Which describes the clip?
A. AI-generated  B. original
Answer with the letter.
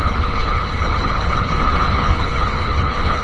A